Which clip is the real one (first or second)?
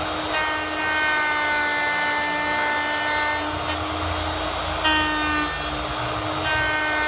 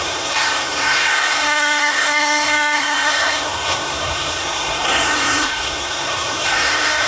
first